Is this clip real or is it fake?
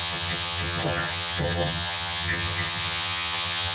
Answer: fake